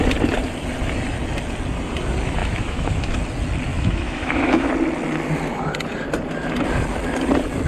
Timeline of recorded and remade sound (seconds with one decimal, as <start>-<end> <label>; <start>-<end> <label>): 0.0-2.4 recorded; 2.4-3.1 remade; 3.1-3.7 recorded; 3.7-4.7 remade; 4.7-7.7 recorded